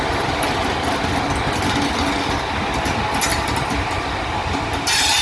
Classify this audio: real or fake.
real